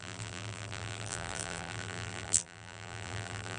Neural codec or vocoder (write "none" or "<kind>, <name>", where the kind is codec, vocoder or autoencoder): vocoder, BigVGAN v2